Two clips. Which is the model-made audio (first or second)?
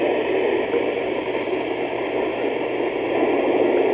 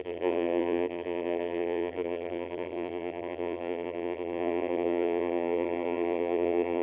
second